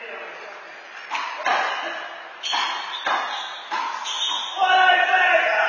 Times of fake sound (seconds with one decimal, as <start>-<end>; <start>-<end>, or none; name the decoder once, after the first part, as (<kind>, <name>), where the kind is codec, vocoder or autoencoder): none